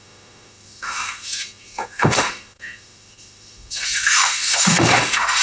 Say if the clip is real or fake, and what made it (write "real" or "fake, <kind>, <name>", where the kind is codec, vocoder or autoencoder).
fake, autoencoder, DAC-VAE